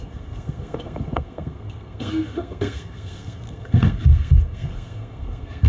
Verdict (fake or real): fake